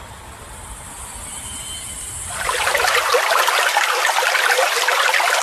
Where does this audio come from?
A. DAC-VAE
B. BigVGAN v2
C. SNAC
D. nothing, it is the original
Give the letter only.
D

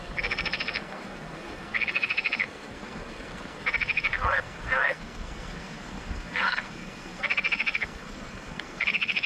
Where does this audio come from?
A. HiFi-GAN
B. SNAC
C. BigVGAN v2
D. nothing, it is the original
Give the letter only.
B